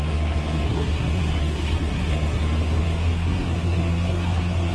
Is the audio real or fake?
fake